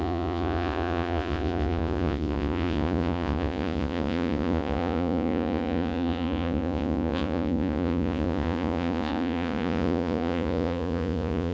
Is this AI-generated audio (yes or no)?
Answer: yes